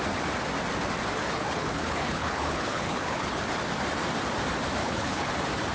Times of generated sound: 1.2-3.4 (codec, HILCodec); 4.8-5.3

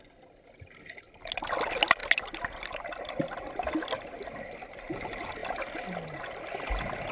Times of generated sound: none

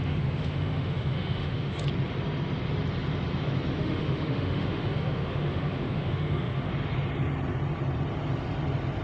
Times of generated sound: 0.0-1.8 (autoencoder, DAC-VAE); 3.8-6.7

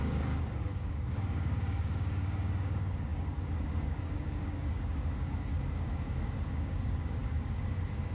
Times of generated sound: 0.0-8.1 (codec, DAC)

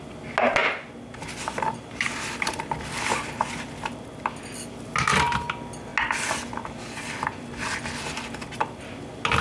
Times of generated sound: none